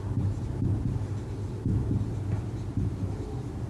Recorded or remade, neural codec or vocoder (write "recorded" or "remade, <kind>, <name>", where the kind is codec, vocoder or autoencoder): remade, vocoder, BigVGAN v2